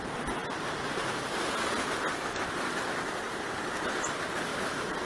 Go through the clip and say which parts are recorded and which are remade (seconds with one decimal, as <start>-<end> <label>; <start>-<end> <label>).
0.0-5.1 recorded